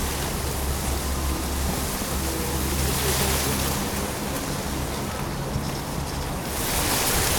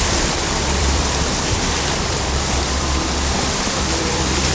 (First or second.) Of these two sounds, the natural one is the first